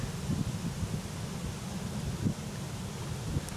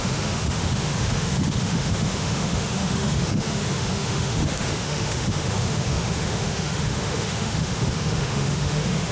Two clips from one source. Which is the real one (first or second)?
first